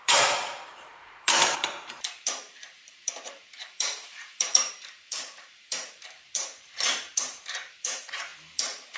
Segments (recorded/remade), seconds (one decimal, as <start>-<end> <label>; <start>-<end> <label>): 0.0-9.0 remade